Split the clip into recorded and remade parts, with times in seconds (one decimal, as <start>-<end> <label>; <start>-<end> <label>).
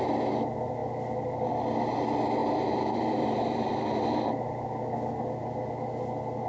0.0-2.4 recorded; 2.4-4.3 remade; 4.3-6.5 recorded